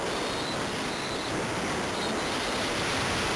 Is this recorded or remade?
recorded